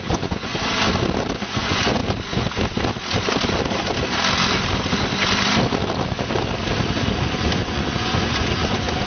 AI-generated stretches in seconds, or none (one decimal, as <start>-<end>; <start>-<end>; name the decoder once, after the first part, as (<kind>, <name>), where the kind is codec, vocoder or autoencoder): 0.0-0.5 (vocoder, Vocos); 1.4-2.0; 7.2-9.1